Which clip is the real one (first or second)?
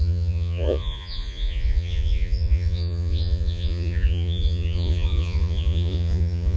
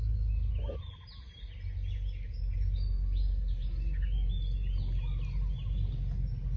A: second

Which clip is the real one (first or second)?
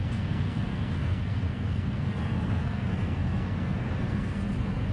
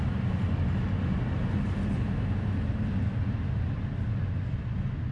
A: second